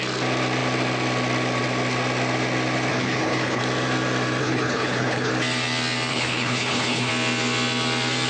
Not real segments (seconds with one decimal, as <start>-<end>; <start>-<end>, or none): 2.9-3.6; 4.4-5.3; 6.1-7.1